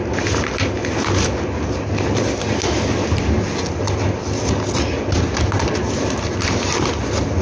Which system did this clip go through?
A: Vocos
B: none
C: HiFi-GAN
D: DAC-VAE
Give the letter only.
B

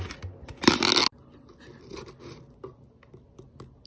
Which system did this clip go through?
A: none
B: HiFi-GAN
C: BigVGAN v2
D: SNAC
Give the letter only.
A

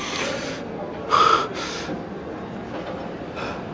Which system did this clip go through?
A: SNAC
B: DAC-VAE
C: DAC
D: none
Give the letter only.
D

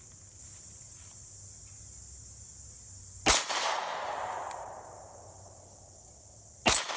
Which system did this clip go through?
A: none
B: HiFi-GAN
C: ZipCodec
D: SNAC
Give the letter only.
A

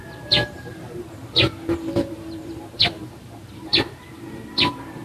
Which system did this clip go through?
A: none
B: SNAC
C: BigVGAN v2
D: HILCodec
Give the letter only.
C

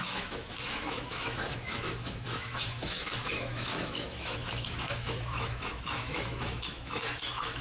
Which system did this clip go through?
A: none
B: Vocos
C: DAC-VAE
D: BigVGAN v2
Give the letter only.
C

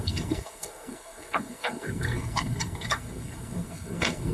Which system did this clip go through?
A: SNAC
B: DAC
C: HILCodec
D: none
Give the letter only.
A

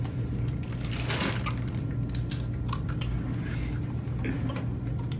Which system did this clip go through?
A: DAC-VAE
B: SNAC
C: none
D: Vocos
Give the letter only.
C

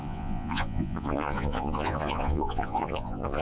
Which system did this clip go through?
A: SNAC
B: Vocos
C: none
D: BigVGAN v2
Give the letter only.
B